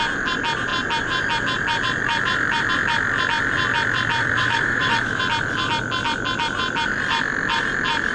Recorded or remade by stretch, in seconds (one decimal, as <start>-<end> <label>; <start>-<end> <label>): 0.0-4.2 recorded; 4.2-5.2 remade; 5.2-8.1 recorded